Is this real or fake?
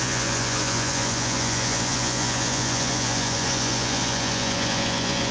fake